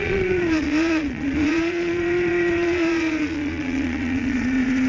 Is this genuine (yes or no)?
no